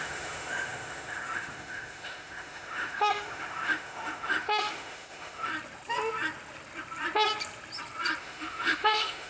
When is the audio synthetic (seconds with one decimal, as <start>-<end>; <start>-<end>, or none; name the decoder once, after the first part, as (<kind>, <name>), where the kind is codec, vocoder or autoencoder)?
0.0-5.5 (autoencoder, DAC-VAE); 8.2-9.3